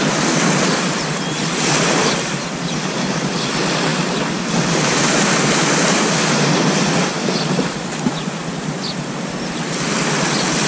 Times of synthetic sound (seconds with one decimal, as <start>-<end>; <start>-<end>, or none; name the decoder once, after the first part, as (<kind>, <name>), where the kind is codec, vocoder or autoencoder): none